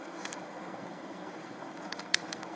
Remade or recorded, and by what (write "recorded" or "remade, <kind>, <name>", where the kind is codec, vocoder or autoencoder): remade, codec, SNAC